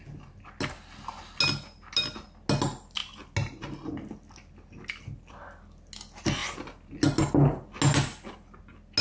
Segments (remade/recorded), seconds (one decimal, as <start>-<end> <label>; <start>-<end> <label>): 0.0-9.0 recorded